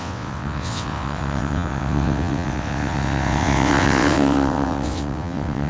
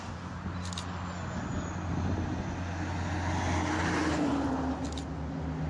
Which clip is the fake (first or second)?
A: first